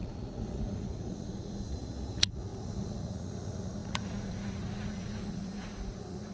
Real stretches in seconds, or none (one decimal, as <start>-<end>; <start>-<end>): none